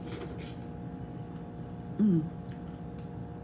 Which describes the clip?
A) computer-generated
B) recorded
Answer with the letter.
B